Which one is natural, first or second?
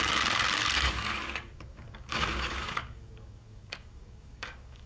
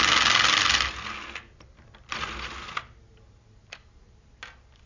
second